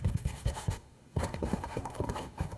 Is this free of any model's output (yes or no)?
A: no